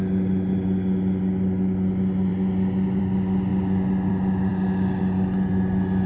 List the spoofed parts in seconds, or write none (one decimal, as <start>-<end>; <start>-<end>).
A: none